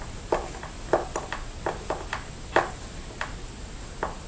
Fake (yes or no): no